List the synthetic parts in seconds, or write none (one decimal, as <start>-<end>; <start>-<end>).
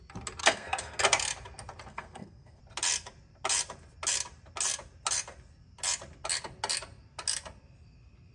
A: 0.4-1.0; 1.9-2.6